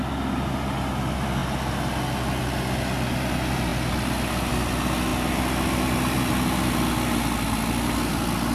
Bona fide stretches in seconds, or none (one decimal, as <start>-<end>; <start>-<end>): 0.0-8.5